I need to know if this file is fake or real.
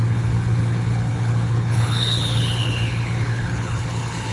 fake